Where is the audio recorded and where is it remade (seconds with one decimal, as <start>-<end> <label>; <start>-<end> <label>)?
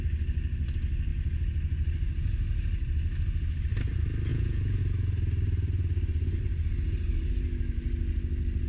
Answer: 0.0-4.3 recorded; 4.3-4.8 remade; 4.8-8.7 recorded